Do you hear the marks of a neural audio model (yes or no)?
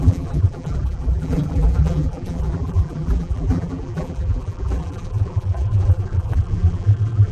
yes